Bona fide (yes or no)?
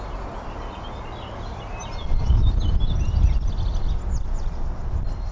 yes